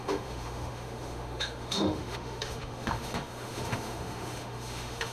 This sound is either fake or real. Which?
fake